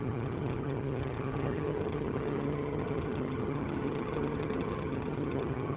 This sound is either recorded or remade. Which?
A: remade